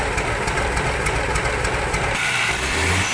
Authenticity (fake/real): real